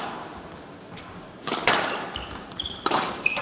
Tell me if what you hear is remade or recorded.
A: remade